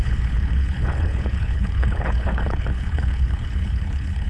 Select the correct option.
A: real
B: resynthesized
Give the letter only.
B